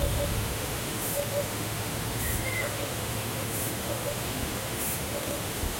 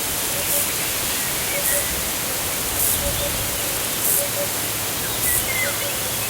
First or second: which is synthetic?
first